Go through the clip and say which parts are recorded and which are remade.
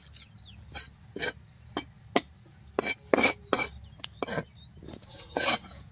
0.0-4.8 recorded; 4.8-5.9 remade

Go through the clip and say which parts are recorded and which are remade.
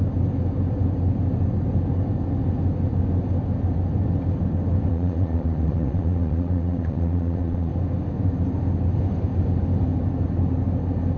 0.0-4.9 recorded; 4.9-7.7 remade; 7.7-11.2 recorded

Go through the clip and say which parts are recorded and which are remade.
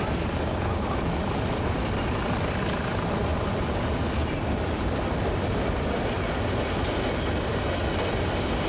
0.0-8.7 recorded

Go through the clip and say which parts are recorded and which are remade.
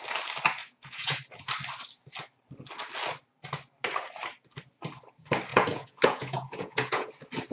0.0-0.6 recorded; 0.6-1.2 remade; 1.2-5.5 recorded; 5.5-7.1 remade; 7.1-7.5 recorded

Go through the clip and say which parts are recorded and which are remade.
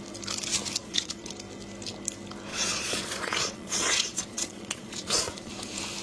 0.0-0.8 recorded; 0.8-1.3 remade; 1.3-2.5 recorded; 2.5-5.5 remade; 5.5-6.0 recorded